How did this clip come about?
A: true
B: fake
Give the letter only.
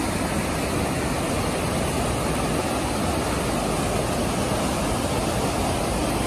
A